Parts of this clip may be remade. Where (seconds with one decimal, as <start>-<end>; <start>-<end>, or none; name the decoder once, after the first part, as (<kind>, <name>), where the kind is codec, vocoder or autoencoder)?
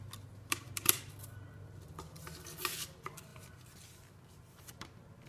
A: none